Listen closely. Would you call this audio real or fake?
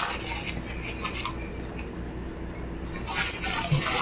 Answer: real